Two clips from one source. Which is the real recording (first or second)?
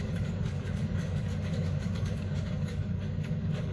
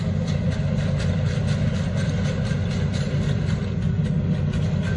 second